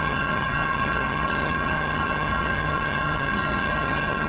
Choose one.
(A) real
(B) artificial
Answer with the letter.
B